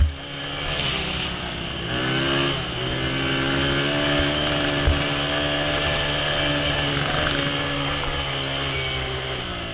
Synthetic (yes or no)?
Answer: no